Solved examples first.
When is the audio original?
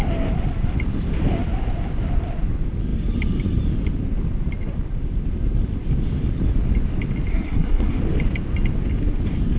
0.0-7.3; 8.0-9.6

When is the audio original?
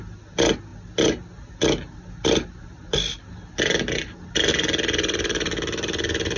0.0-6.4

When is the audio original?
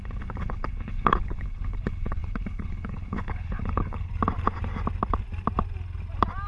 4.1-6.5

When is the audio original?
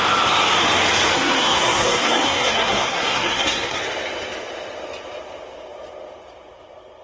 0.0-1.1; 3.8-7.0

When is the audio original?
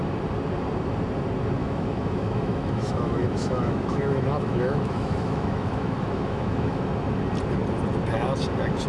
0.0-1.6; 6.8-8.9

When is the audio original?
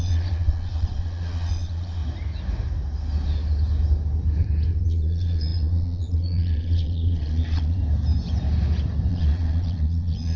2.0-4.7; 7.8-9.1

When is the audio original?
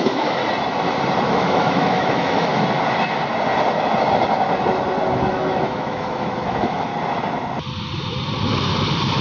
0.4-1.3; 2.5-5.3; 6.9-9.2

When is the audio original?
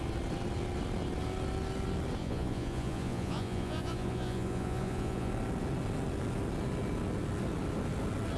0.0-2.2; 5.3-8.4